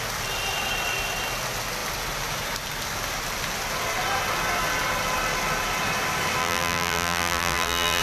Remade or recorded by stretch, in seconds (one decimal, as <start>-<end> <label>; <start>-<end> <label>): 0.0-6.4 recorded; 6.4-8.0 remade